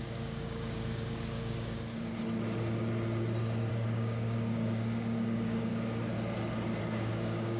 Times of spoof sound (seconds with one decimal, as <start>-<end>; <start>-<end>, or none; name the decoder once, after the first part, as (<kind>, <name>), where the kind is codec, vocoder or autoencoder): 0.0-2.1 (codec, DAC); 3.7-5.7; 6.8-7.6